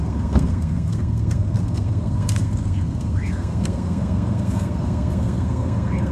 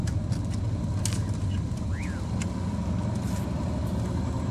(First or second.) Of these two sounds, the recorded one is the second